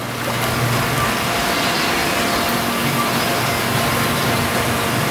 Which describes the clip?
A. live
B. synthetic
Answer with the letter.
A